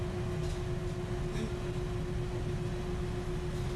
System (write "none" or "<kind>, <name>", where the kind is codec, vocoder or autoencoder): none